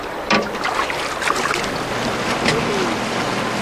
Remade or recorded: recorded